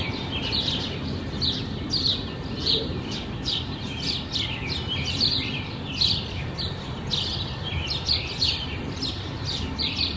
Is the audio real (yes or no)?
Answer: no